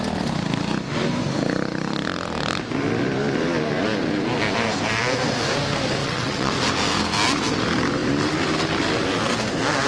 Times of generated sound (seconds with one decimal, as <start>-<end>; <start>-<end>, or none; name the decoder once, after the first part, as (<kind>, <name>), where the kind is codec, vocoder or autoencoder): 6.0-6.5 (vocoder, WaveNeXt)

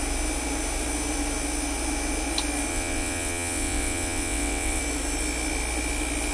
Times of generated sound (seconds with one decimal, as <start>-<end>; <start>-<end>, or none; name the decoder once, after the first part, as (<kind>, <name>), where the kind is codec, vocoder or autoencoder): 2.7-4.8 (vocoder, WaveNeXt)

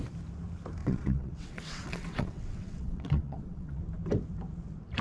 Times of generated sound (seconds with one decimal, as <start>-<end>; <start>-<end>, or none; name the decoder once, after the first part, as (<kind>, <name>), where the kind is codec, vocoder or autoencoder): 0.8-3.8 (vocoder, WaveNeXt)

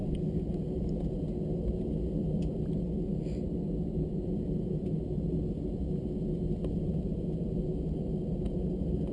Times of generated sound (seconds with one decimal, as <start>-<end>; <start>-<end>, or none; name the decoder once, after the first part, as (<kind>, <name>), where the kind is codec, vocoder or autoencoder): none

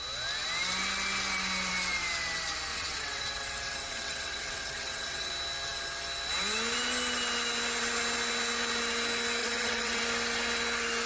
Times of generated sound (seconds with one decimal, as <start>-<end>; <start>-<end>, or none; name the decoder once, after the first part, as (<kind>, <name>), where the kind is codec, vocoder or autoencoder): 2.7-5.3 (vocoder, WaveNeXt); 9.4-10.0